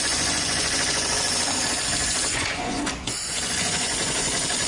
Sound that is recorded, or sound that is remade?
remade